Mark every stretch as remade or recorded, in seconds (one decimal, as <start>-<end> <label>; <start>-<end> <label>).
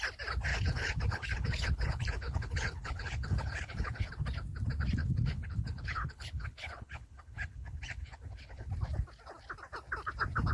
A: 0.0-0.5 recorded; 0.5-4.1 remade; 4.1-5.0 recorded; 5.0-8.7 remade; 8.7-10.5 recorded